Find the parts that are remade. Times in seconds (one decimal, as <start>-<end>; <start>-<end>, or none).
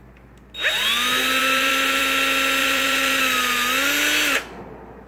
1.4-2.0; 2.6-3.2